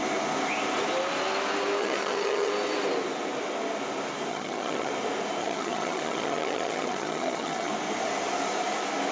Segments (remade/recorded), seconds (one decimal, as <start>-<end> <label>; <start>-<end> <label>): 0.0-1.8 recorded; 1.8-2.5 remade; 2.5-4.3 recorded; 4.3-4.9 remade; 4.9-5.4 recorded; 5.4-7.7 remade; 7.7-9.1 recorded